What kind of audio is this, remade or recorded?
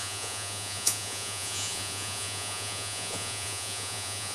remade